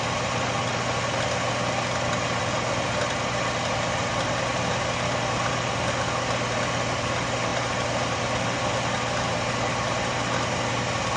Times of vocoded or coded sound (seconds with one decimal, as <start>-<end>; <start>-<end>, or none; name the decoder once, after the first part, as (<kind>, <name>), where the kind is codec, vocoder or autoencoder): none